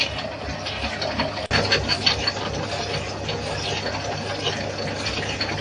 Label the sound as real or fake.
real